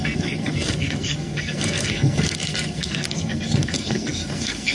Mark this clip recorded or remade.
remade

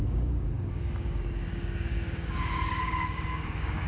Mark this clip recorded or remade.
remade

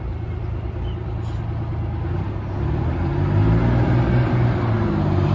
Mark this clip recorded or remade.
recorded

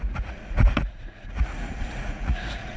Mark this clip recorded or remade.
remade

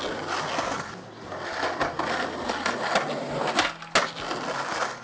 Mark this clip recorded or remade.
recorded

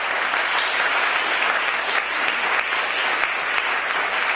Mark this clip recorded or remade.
recorded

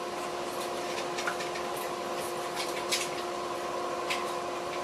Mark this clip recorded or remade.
recorded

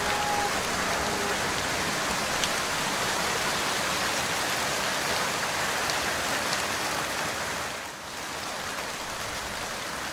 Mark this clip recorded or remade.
recorded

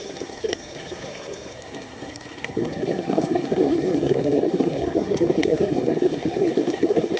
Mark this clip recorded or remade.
remade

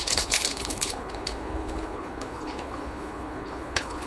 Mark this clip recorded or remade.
remade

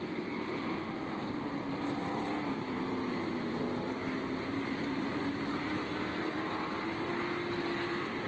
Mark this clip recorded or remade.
remade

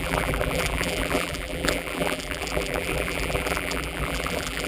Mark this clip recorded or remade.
remade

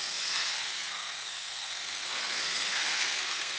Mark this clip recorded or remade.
remade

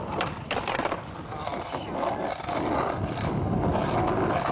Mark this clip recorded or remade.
recorded